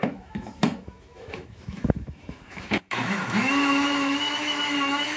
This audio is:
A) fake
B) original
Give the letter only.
A